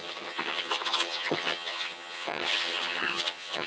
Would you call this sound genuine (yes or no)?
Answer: no